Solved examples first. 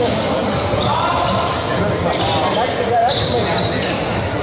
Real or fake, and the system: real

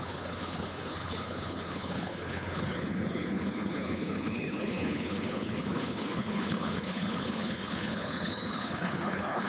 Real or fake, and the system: fake, codec, HILCodec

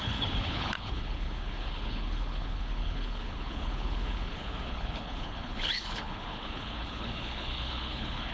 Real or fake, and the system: fake, codec, HILCodec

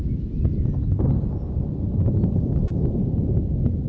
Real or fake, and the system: real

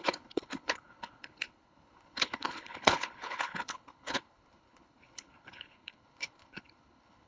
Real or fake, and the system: fake, codec, HILCodec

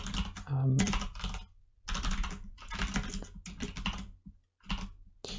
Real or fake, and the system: real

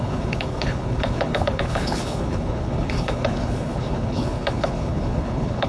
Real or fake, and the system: fake, codec, HILCodec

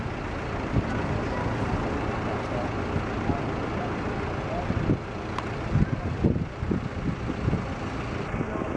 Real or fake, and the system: real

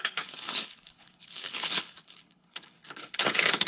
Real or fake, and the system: fake, codec, HILCodec